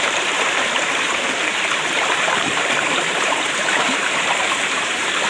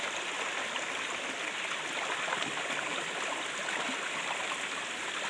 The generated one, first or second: first